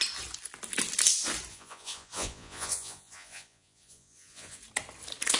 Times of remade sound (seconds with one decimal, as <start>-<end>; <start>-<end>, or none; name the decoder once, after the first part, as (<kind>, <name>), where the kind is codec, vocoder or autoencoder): 1.5-4.6 (vocoder, Vocos)